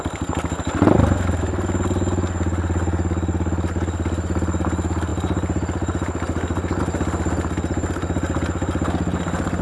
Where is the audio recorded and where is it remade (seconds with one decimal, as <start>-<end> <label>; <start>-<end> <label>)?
0.0-9.6 recorded

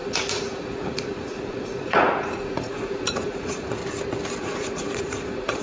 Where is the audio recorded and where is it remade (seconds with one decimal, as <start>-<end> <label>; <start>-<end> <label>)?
0.0-3.8 remade; 3.8-4.4 recorded; 4.4-5.6 remade

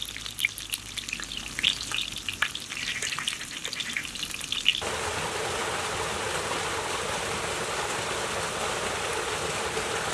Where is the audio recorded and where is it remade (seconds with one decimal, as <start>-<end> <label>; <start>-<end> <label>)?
0.0-10.1 recorded

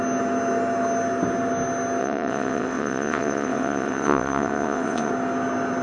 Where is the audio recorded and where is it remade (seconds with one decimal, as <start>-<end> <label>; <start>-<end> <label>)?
0.0-2.0 recorded; 2.0-5.1 remade; 5.1-5.8 recorded

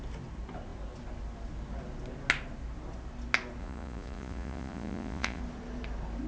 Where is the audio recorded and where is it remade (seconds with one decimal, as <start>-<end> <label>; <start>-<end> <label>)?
0.0-3.6 recorded; 3.6-5.4 remade; 5.4-6.3 recorded